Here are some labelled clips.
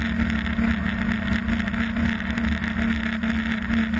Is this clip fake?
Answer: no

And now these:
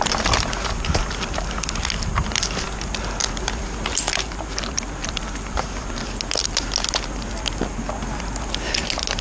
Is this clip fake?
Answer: no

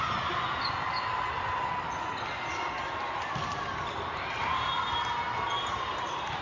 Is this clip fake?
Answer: no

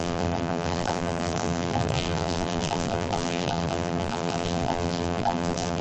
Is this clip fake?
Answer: yes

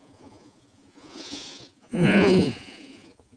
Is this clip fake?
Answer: yes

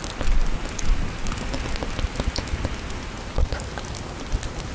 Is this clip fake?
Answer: no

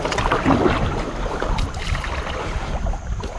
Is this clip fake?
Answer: no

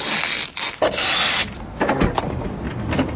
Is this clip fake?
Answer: no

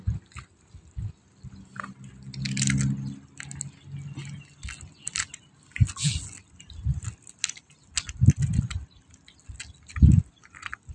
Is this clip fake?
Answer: no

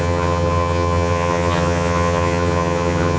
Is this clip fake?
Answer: yes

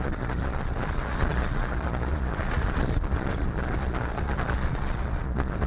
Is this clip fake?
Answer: yes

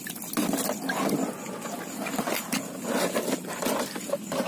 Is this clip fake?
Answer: no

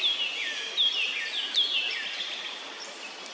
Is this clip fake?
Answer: no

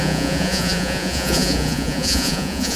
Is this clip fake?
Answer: yes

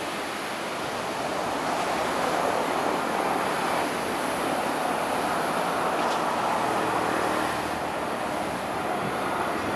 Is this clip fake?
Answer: no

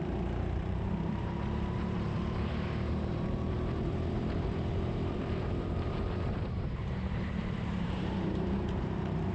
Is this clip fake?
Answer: yes